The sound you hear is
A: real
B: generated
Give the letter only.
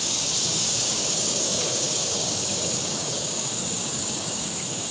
B